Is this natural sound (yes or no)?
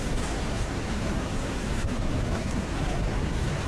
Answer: no